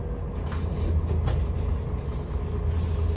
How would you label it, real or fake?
real